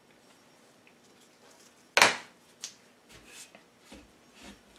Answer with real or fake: real